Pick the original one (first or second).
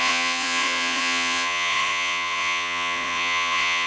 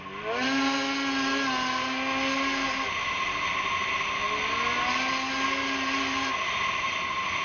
second